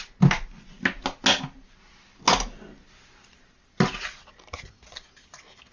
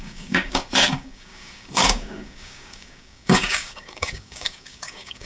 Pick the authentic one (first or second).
first